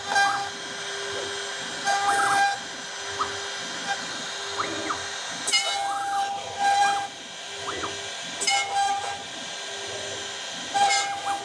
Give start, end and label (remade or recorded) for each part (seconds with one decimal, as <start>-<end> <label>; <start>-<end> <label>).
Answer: 0.0-11.4 recorded